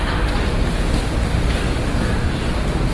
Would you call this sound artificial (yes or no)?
no